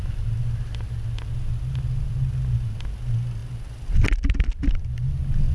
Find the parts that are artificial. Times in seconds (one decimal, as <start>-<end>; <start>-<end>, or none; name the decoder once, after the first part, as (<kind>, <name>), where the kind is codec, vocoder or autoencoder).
none